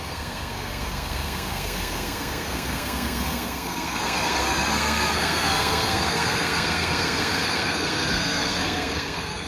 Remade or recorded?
remade